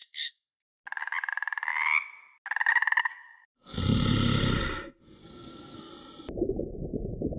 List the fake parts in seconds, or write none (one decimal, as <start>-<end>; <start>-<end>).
0.0-0.8; 3.0-3.8; 5.2-5.9